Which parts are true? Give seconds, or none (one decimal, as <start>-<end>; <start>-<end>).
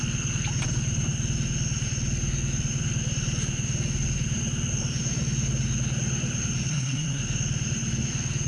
0.0-6.7; 7.2-8.5